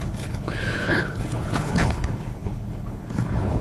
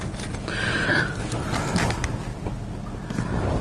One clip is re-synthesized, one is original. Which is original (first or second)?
second